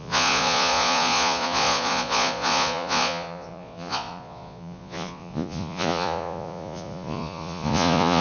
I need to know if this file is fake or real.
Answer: fake